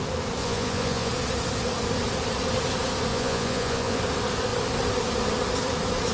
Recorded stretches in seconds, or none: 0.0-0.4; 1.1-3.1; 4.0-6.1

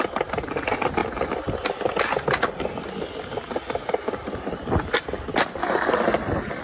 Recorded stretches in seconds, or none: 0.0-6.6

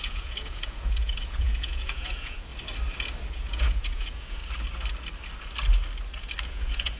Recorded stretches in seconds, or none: 2.5-3.3; 4.4-6.4

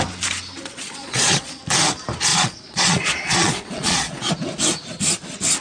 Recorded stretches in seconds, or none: 0.0-0.6; 1.6-2.3; 4.3-5.6

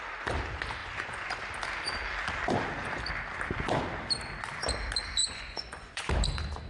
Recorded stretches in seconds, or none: 0.0-0.8; 1.4-5.2; 6.0-6.7

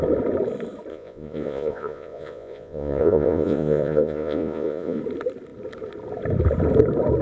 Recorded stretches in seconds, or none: 0.0-0.9; 5.0-7.2

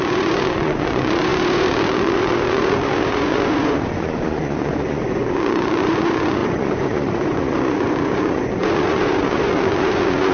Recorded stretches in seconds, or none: none